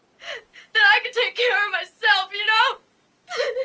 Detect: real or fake real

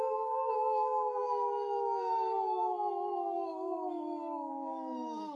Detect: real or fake fake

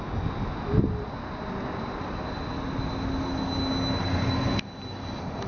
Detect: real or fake real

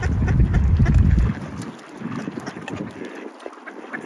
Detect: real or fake real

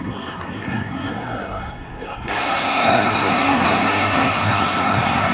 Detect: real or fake fake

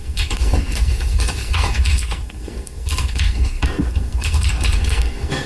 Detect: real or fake fake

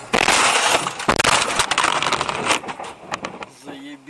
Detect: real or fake real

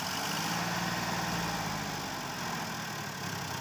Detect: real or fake real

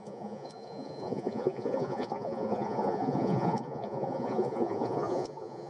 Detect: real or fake fake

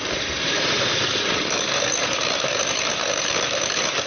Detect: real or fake fake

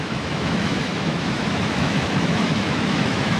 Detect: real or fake fake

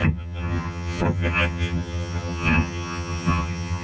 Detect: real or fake fake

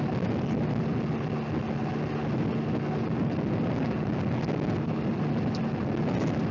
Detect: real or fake real